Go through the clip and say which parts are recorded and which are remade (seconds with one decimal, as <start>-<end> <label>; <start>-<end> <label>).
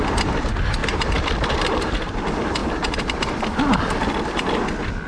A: 0.0-0.8 recorded; 0.8-2.2 remade; 2.2-2.6 recorded; 2.6-3.2 remade; 3.2-5.1 recorded